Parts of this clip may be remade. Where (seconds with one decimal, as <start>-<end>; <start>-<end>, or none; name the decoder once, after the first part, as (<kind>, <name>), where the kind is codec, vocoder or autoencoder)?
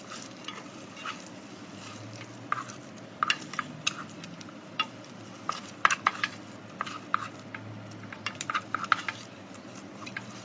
none